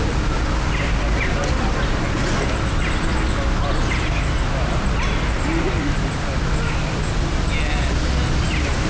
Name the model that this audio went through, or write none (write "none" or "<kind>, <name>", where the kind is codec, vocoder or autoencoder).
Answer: none